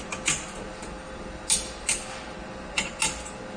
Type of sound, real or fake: real